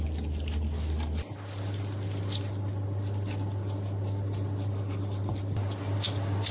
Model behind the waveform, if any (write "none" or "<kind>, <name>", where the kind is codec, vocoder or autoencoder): none